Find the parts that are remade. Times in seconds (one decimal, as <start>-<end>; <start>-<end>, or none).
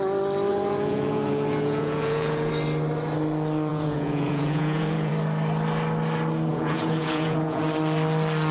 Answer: 0.5-2.5; 3.7-5.1; 6.5-7.6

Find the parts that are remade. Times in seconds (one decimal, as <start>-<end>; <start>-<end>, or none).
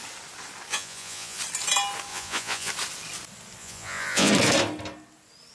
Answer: 0.7-1.4; 2.1-2.7; 3.6-4.3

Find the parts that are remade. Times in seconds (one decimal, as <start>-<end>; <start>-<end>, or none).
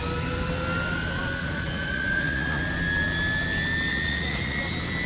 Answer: 1.4-2.6; 3.9-4.6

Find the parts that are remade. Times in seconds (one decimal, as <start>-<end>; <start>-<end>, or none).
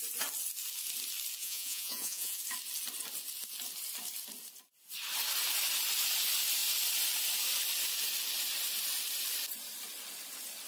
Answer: 1.4-2.4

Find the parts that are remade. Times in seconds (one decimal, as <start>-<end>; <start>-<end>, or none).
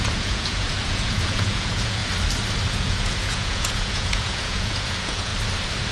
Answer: 0.0-2.0; 2.7-5.3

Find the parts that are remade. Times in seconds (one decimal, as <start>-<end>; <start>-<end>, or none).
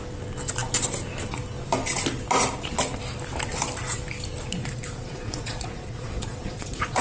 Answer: 4.6-7.0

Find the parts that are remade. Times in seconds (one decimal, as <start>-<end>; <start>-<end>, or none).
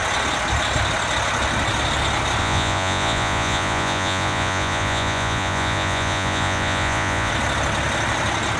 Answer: 2.4-7.3